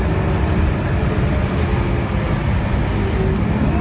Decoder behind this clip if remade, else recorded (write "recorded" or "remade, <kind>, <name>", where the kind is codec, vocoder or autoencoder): recorded